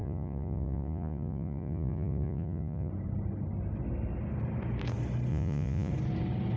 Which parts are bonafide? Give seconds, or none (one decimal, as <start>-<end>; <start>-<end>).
2.9-5.3; 5.9-6.6

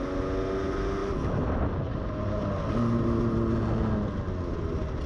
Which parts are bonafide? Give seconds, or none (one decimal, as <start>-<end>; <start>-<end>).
0.0-5.1

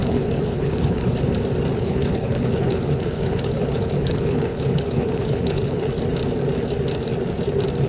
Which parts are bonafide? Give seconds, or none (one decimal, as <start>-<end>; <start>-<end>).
1.1-1.7; 5.9-7.9

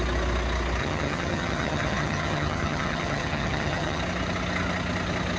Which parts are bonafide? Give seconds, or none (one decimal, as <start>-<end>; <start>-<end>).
0.0-0.8; 4.0-5.4

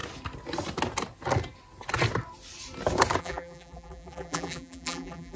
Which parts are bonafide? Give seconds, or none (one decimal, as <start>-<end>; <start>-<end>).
0.0-3.2

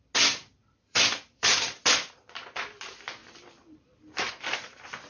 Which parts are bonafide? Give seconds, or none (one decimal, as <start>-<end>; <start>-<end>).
0.0-0.6; 1.8-3.2; 4.3-5.1

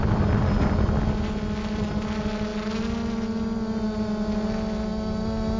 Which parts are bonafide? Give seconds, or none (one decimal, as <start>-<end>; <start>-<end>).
0.0-5.6